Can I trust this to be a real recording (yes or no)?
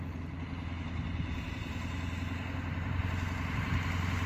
yes